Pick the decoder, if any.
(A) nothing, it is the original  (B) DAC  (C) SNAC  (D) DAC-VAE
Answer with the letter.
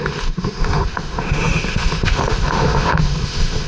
D